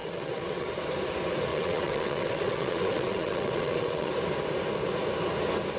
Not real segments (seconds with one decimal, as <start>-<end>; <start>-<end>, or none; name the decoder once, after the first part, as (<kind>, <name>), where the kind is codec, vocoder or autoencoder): 0.0-0.7 (vocoder, WaveNeXt); 1.5-4.1